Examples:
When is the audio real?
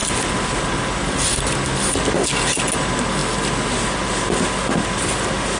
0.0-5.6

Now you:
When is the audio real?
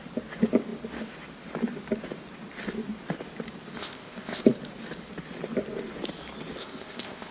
0.0-3.8; 4.4-6.6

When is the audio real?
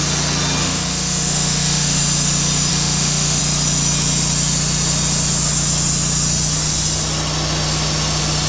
0.0-0.6; 2.0-2.7; 3.4-8.5